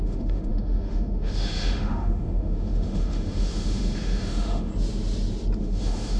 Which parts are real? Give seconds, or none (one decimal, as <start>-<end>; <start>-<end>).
4.7-5.6